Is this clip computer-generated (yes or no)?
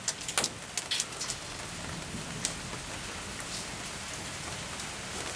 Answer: no